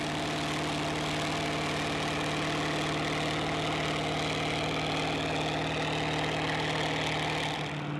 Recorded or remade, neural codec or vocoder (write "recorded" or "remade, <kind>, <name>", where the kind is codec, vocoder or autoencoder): recorded